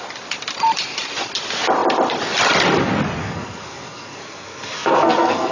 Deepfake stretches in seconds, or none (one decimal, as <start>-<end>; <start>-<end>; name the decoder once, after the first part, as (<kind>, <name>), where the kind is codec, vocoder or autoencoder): 3.2-5.5 (codec, SNAC)